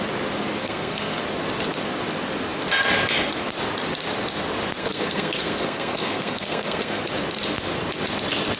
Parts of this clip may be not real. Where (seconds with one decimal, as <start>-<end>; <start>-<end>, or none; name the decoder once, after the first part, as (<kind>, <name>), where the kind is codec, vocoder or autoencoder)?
0.6-1.2 (codec, SNAC); 4.8-7.0